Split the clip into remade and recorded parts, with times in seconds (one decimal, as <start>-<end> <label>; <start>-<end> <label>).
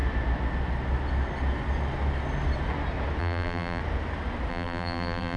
0.0-3.2 recorded; 3.2-3.8 remade; 3.8-4.5 recorded; 4.5-5.4 remade